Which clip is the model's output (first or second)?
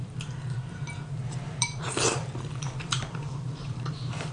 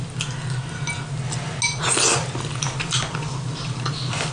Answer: first